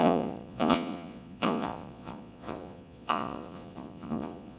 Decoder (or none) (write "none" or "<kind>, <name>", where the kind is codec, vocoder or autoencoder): vocoder, Vocos